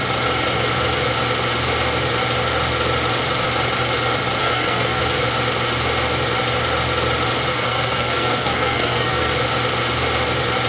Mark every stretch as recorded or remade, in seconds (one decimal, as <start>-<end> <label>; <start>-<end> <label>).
0.0-4.4 recorded; 4.4-5.0 remade; 5.0-7.5 recorded; 7.5-9.3 remade; 9.3-10.7 recorded